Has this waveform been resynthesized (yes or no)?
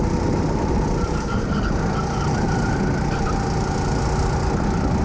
no